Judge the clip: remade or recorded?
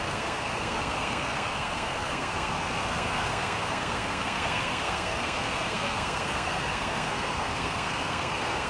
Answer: remade